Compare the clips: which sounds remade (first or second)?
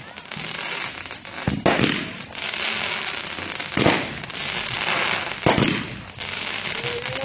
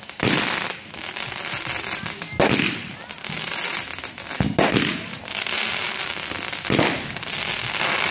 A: second